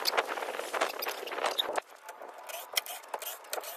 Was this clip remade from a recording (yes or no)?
no